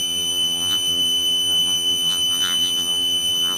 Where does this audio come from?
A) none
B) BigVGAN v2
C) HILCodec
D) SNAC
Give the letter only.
B